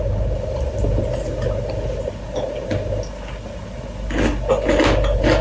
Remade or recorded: recorded